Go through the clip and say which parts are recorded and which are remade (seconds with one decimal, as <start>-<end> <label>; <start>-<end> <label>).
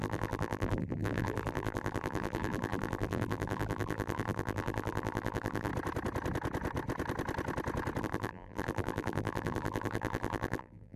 0.0-5.7 remade; 5.7-8.0 recorded; 8.0-11.0 remade